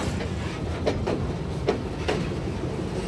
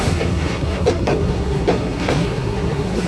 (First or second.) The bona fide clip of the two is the first